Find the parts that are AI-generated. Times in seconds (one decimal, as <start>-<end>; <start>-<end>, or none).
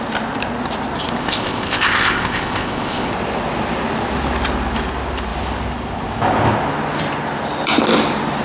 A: 1.2-3.1